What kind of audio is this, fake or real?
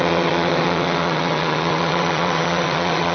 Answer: fake